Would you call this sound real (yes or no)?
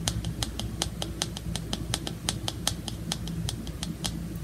yes